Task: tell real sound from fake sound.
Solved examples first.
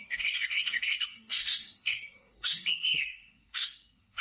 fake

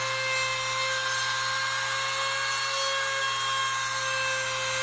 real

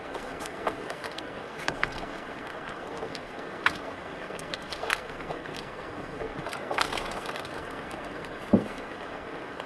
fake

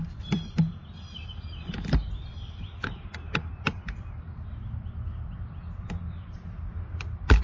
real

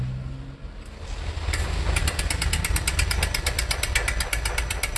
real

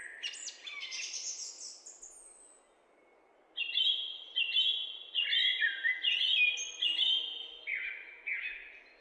real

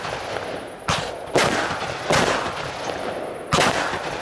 real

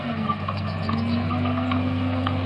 fake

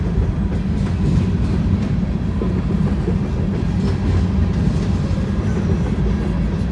real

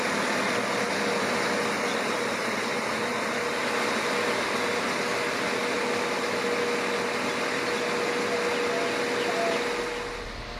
real